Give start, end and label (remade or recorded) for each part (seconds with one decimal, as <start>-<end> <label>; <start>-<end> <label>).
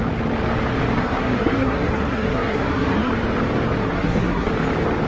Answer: 0.0-1.0 recorded; 1.0-3.1 remade; 3.1-3.8 recorded; 3.8-4.5 remade; 4.5-5.1 recorded